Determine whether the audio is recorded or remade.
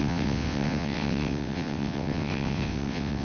remade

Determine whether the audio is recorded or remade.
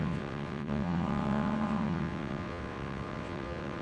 remade